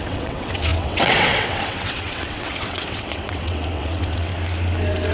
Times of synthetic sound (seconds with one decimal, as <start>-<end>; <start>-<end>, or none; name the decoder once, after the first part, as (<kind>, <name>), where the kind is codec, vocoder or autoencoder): 0.0-4.3 (vocoder, WaveNeXt)

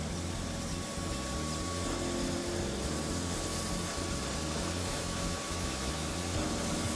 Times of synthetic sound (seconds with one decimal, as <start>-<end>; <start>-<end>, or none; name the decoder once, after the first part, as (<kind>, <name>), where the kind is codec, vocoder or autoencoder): 4.8-6.1 (autoencoder, DAC-VAE)

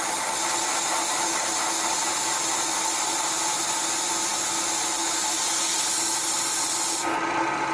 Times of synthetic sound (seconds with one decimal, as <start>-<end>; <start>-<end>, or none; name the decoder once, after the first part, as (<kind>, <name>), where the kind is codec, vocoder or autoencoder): none

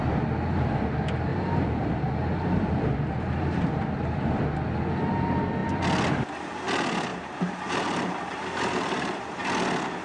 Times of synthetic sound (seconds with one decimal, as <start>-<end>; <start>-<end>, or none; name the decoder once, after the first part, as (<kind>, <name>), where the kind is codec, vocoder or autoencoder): 1.3-4.4 (vocoder, BigVGAN v2); 7.1-9.4

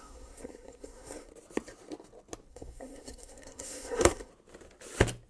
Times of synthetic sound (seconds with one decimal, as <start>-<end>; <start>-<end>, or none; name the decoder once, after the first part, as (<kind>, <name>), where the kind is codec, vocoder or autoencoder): 0.0-1.3 (codec, SNAC); 2.5-4.3

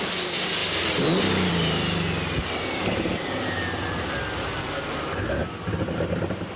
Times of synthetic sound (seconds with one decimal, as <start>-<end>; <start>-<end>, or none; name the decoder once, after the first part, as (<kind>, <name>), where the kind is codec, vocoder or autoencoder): none

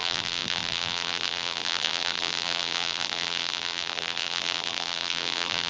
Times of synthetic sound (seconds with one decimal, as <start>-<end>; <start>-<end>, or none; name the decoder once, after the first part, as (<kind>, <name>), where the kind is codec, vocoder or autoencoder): 0.0-5.7 (vocoder, BigVGAN v2)